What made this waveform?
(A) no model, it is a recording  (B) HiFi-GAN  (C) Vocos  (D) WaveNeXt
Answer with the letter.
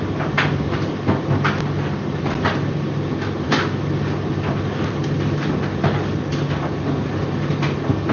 A